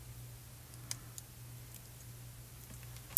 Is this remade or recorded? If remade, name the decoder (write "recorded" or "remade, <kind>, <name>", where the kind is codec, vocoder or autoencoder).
recorded